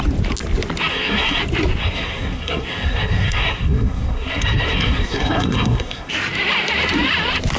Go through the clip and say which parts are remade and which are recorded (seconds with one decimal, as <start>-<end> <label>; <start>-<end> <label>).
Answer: 0.0-0.9 recorded; 0.9-1.4 remade; 1.4-1.8 recorded; 1.8-6.1 remade; 6.1-7.6 recorded